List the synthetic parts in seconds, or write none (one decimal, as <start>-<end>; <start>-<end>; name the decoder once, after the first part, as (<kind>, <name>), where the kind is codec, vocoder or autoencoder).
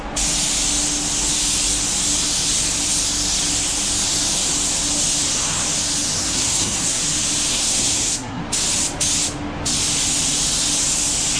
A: 6.2-7.0 (codec, SNAC); 7.5-8.4